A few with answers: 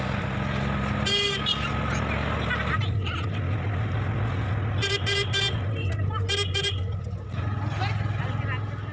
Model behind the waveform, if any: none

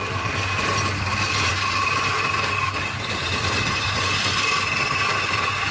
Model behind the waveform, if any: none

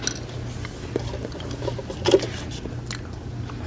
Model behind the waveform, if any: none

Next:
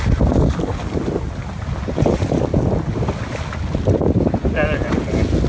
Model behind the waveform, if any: none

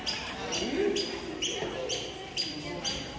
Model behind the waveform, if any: none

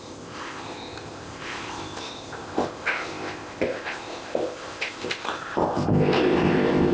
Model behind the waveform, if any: codec, ZipCodec